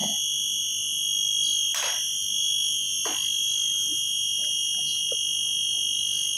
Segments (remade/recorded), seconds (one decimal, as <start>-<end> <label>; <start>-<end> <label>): 0.0-6.4 recorded